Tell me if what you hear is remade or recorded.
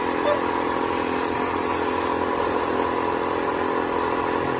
recorded